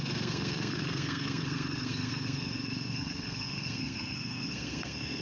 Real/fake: fake